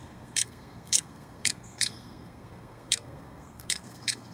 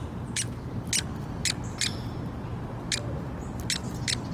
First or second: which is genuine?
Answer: second